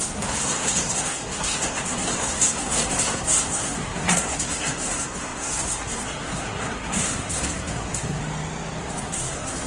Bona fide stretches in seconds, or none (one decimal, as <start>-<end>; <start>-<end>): 8.2-8.8